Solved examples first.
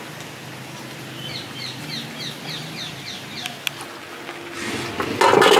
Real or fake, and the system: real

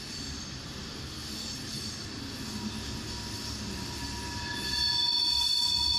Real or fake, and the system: real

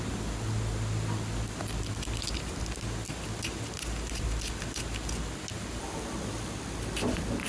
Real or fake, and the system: real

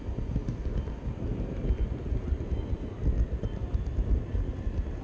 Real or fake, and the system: real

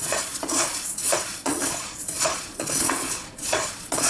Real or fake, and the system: fake, vocoder, Vocos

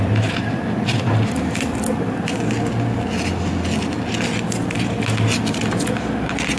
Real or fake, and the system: real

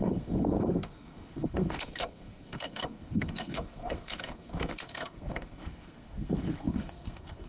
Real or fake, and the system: fake, codec, SNAC